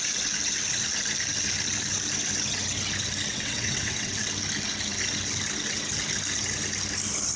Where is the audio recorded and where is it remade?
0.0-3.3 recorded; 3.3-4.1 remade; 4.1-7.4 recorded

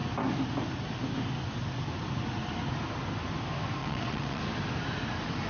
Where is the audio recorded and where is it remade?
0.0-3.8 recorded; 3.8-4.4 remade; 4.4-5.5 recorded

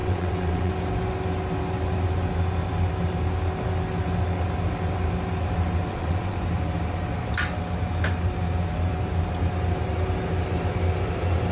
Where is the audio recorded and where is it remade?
0.0-0.7 remade; 0.7-5.9 recorded; 5.9-6.4 remade; 6.4-11.5 recorded